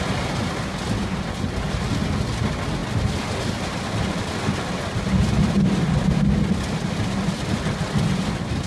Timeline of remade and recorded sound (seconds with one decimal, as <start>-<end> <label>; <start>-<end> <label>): 0.0-8.7 recorded